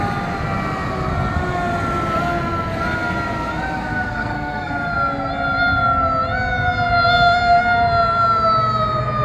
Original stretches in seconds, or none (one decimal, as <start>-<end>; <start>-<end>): 0.0-3.8; 4.7-9.2